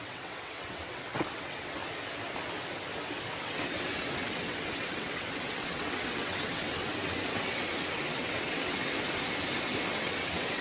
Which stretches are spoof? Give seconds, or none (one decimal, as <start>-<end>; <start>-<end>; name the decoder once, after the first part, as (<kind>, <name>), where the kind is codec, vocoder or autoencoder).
0.0-1.8 (vocoder, WaveNeXt); 3.4-8.9; 9.9-10.6